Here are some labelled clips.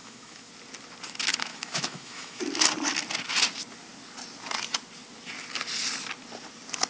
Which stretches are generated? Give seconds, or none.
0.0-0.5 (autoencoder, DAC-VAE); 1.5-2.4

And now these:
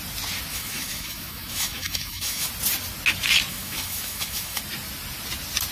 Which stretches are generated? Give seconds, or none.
0.5-2.5 (autoencoder, DAC-VAE); 3.5-4.6